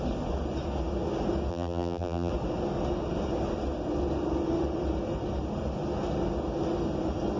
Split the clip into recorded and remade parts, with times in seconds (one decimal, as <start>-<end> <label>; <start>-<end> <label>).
0.0-1.5 recorded; 1.5-2.3 remade; 2.3-7.4 recorded